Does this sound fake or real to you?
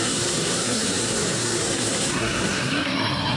fake